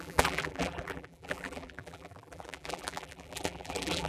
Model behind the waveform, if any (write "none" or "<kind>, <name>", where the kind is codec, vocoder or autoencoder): vocoder, BigVGAN v2